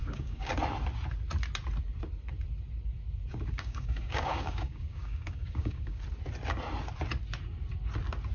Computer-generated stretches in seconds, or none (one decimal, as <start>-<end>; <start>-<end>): 0.0-0.5; 3.3-6.0

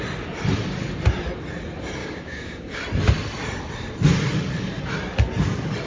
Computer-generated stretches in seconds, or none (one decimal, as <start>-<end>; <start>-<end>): 2.0-2.8

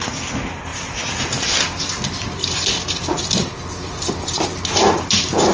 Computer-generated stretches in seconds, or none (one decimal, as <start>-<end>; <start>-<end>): none

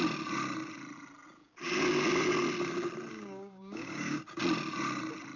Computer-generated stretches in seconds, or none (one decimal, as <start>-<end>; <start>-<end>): 3.1-4.2